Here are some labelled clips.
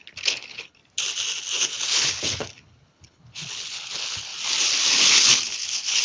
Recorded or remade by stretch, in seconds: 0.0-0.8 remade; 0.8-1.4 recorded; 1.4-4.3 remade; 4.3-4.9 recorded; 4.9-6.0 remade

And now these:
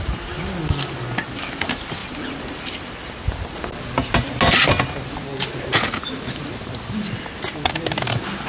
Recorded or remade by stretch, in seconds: 0.0-2.0 recorded; 2.0-3.7 remade; 3.7-8.5 recorded